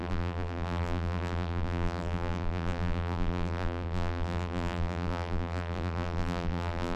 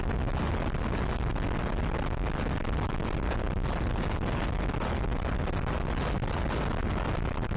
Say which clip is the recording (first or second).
second